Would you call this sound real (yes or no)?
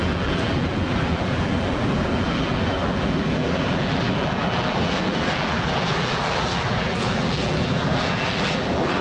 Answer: no